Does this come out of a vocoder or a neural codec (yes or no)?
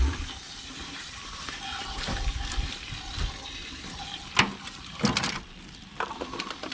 no